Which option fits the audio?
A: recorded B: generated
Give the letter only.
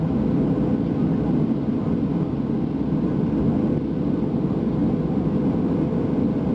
A